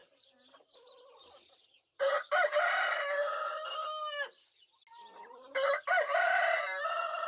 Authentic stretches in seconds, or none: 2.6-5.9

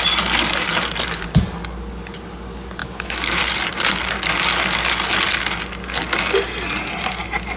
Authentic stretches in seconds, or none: 0.0-2.8; 3.4-7.6

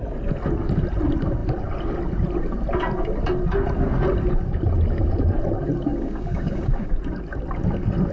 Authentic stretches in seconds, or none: 0.0-5.9; 7.0-8.1

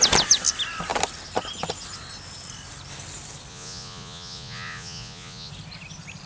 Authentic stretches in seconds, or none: 0.0-3.5; 5.5-6.3